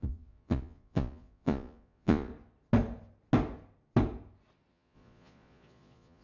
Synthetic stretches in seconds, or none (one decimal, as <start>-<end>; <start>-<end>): 0.0-2.3; 4.7-6.2